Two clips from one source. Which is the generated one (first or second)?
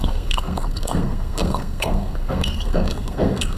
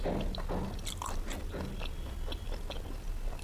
first